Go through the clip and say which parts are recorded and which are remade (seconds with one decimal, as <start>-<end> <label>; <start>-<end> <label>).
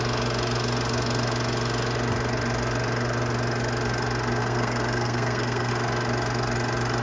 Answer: 0.0-4.4 recorded; 4.4-5.7 remade; 5.7-7.0 recorded